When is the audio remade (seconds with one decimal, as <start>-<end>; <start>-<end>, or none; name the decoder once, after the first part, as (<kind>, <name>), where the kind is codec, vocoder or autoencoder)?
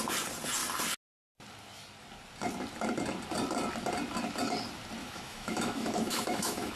5.0-6.8 (autoencoder, DAC-VAE)